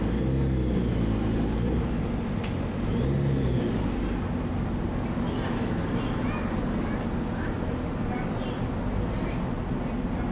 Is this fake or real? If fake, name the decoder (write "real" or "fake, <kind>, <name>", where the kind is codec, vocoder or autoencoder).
real